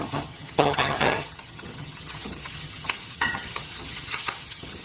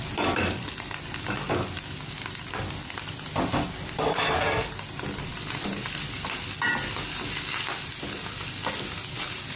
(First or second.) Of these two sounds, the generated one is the first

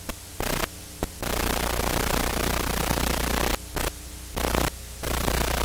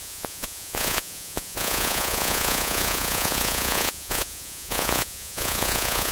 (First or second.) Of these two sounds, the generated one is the second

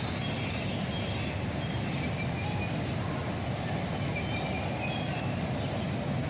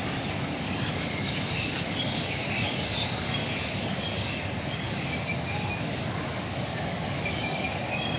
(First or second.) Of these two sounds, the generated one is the second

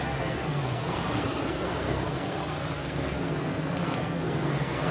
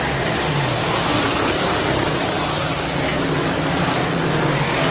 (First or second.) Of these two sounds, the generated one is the first